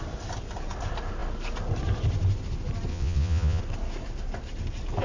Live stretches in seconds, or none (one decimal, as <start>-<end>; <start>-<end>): 0.0-2.9; 3.6-5.0

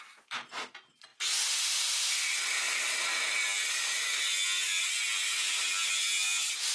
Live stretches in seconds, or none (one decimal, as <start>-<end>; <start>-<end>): 0.0-6.7